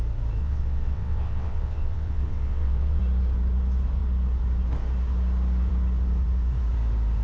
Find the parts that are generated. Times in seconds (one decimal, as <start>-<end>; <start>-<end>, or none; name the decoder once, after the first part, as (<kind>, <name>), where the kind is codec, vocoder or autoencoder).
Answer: 0.4-3.0 (vocoder, WaveNeXt)